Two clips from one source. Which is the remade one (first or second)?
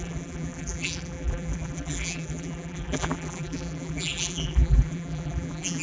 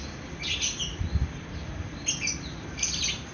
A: first